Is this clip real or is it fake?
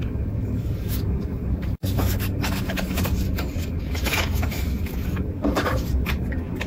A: fake